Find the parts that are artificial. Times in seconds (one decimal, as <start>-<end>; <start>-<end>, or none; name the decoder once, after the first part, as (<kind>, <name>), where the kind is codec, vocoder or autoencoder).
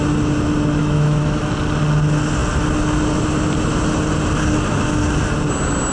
0.8-1.4 (autoencoder, DAC-VAE)